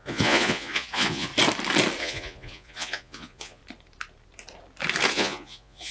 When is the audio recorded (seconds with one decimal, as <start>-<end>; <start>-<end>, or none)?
1.3-2.0; 3.6-5.1

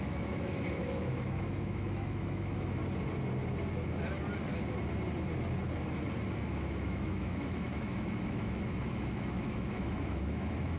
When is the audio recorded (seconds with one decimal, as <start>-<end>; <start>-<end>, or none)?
2.8-6.3

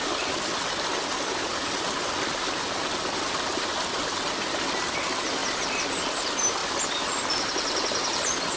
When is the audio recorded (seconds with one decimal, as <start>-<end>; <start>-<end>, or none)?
0.0-1.5; 3.5-6.6; 7.4-8.6

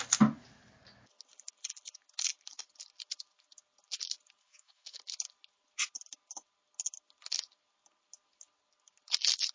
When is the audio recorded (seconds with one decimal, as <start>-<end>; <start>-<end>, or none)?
0.0-4.4; 5.0-9.5

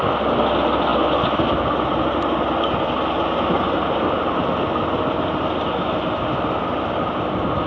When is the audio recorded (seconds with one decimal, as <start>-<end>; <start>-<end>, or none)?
0.0-7.7